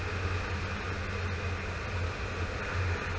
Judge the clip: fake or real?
real